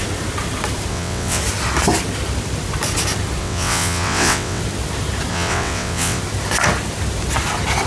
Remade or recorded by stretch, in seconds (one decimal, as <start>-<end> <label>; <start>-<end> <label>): 0.0-0.9 recorded; 0.9-1.4 remade; 1.4-3.4 recorded; 3.4-4.6 remade; 4.6-5.3 recorded; 5.3-6.2 remade; 6.2-7.9 recorded

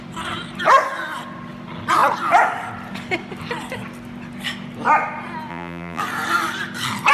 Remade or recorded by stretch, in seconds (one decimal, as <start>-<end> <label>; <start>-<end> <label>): 0.0-5.5 recorded; 5.5-6.0 remade; 6.0-7.1 recorded

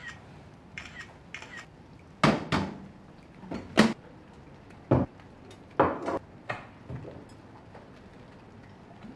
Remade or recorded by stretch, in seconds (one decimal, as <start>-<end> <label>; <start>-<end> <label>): 0.0-1.0 remade; 1.0-9.2 recorded